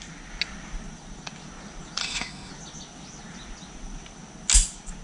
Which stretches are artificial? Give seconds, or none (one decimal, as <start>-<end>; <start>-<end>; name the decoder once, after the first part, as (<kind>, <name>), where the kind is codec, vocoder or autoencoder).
2.0-2.5 (autoencoder, DAC-VAE)